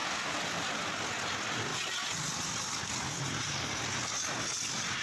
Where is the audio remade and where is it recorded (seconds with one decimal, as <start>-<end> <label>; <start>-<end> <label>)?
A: 0.0-5.0 recorded